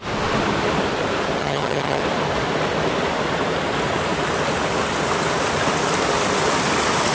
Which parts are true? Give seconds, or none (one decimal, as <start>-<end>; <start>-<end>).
0.0-1.4; 2.0-7.1